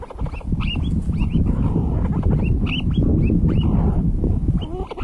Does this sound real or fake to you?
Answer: real